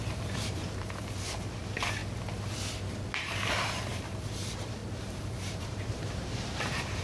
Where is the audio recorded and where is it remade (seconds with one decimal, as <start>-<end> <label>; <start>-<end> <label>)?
0.0-2.0 remade; 2.0-3.2 recorded; 3.2-7.0 remade